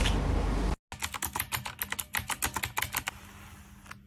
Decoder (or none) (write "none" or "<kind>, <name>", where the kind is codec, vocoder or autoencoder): none